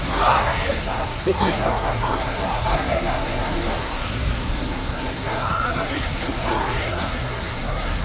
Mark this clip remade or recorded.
remade